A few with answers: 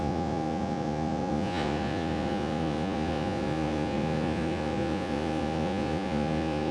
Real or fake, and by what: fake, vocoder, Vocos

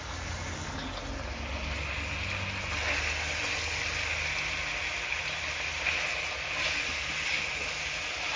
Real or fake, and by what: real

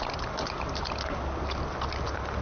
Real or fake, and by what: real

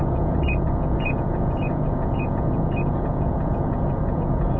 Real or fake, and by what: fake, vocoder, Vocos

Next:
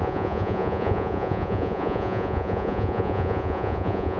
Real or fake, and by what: fake, vocoder, Vocos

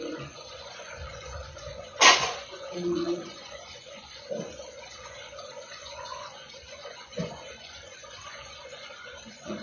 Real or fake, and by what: fake, vocoder, Vocos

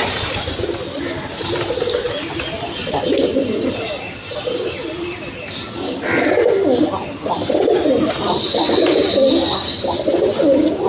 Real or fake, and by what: real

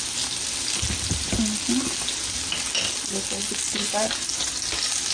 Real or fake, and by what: real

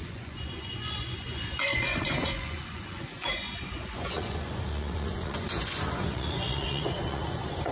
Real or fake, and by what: fake, vocoder, Vocos